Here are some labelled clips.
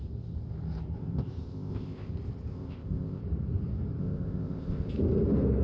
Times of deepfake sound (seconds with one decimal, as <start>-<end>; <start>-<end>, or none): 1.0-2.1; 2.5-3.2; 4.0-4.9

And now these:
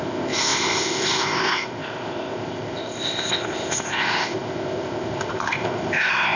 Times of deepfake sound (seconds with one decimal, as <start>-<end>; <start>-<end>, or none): 0.0-6.4

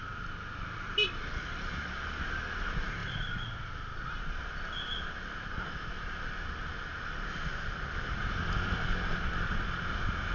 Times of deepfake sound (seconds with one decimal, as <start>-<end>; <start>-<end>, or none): none

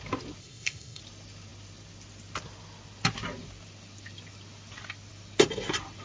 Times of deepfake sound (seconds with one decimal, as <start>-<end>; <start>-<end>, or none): 0.4-1.0

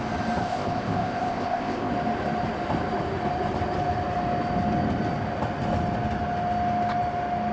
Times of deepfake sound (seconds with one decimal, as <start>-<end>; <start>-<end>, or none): 0.4-1.9